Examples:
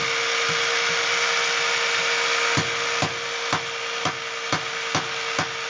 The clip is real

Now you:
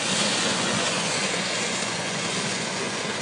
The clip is fake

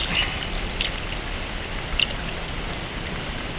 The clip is real